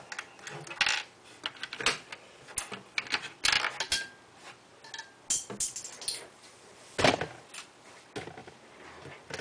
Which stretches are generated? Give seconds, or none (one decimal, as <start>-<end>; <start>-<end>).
none

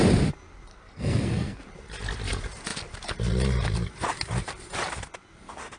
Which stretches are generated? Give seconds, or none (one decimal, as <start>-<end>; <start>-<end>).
0.7-1.6